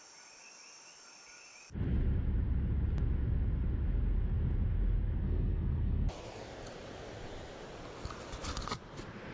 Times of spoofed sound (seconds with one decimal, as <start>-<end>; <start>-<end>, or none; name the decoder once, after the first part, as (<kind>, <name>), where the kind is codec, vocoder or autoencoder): 5.2-6.1 (codec, SNAC)